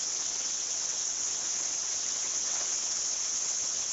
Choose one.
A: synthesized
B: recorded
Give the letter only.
A